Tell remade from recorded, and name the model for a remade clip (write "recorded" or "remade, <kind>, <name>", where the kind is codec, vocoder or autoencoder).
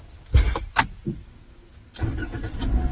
recorded